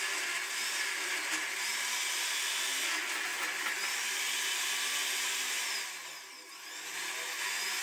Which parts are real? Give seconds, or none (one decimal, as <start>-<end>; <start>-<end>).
0.0-7.8